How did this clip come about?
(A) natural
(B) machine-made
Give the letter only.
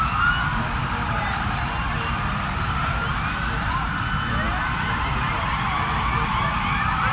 A